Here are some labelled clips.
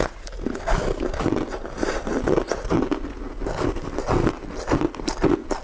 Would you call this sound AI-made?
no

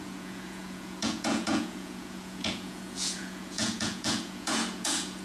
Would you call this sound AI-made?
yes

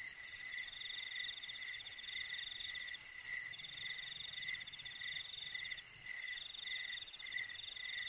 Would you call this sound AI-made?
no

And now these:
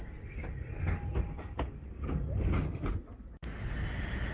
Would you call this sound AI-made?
no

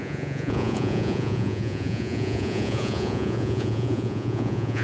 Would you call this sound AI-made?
yes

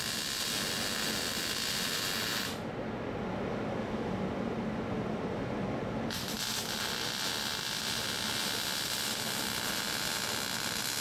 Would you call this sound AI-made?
no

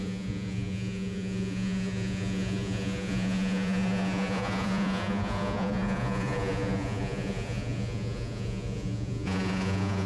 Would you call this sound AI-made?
yes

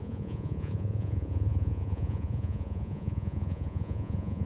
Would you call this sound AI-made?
yes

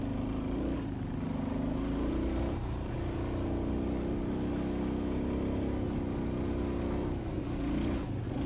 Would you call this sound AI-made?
no